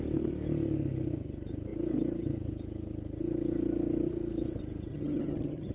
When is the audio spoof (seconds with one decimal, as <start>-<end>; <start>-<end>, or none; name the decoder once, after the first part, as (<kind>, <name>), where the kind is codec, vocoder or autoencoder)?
4.9-5.7 (vocoder, HiFi-GAN)